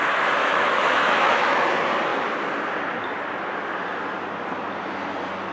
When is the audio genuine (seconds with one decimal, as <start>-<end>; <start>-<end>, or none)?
0.0-0.4; 1.6-5.5